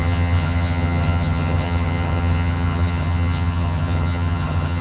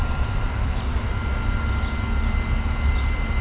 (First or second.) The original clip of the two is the second